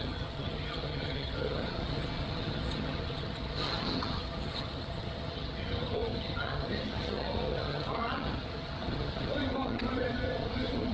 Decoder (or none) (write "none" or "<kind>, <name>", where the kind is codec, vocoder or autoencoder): vocoder, HiFi-GAN